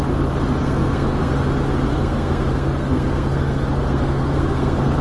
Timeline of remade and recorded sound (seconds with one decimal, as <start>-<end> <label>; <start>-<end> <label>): 0.0-0.6 recorded; 0.6-1.3 remade; 1.3-1.9 recorded; 1.9-5.0 remade